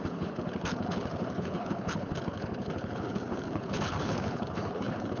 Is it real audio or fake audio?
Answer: fake